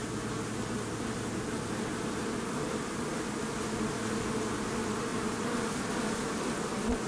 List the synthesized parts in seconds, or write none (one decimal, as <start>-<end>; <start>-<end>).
5.1-6.4